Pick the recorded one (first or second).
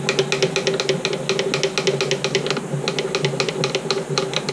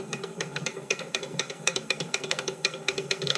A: first